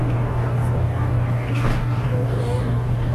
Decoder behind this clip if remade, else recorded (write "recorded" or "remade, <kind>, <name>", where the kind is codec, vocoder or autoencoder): remade, codec, DAC